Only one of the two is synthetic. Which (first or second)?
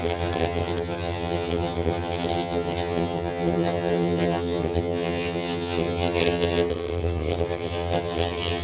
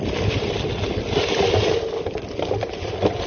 first